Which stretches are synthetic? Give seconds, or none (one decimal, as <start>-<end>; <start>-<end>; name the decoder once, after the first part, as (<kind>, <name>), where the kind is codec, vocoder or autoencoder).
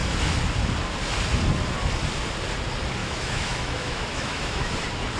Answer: 3.0-4.7 (autoencoder, DAC-VAE)